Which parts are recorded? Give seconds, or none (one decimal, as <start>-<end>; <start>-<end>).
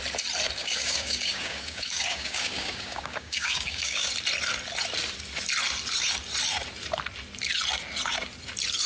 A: 0.0-0.6; 4.1-8.9